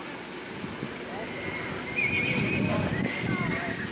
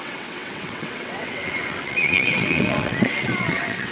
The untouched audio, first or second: first